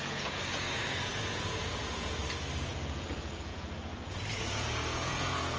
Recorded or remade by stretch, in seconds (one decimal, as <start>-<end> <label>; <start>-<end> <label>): 0.0-2.2 remade; 2.2-2.7 recorded; 2.7-5.6 remade